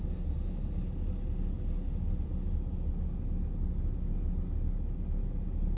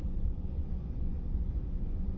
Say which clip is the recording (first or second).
first